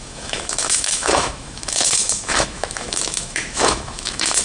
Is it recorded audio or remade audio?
remade